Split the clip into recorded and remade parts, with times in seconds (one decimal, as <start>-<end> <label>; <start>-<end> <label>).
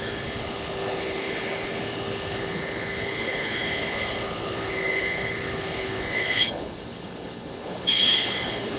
0.0-8.8 remade